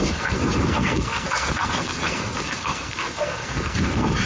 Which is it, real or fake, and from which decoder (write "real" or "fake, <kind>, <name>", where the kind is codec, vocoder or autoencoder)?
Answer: fake, codec, SNAC